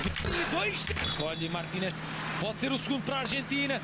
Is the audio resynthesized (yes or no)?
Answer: no